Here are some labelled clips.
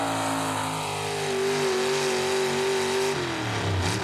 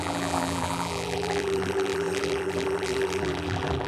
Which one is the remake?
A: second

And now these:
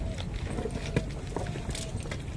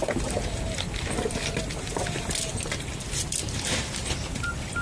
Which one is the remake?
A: second